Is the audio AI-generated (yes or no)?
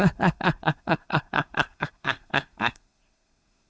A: yes